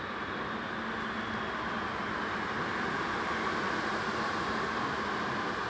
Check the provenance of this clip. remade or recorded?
recorded